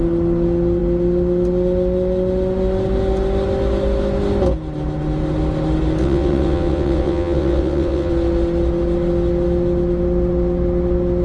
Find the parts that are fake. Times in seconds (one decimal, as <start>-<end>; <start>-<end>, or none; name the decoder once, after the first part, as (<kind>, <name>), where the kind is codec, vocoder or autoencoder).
6.0-8.1 (vocoder, WaveNeXt)